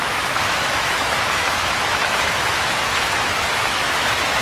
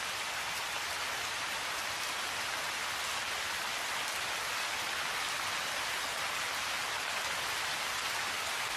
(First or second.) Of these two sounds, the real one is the second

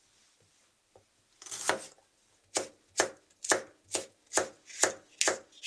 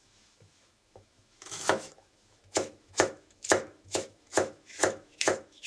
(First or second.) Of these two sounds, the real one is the first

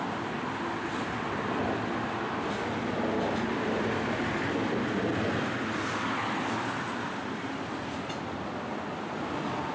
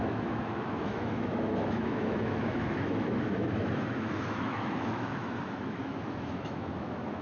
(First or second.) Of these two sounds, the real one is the first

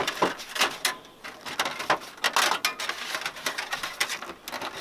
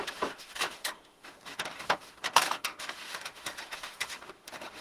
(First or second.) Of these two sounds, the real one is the first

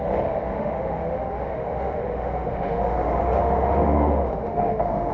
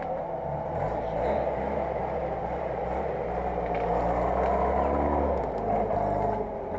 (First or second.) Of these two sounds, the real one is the second